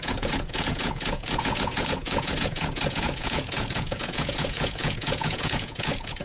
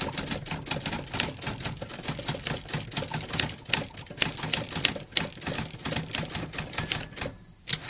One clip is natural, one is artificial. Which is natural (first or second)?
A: second